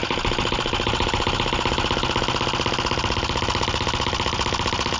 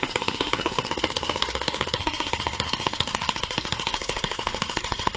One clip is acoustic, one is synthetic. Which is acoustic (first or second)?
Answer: first